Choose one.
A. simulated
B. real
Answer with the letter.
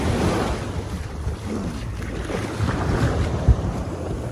A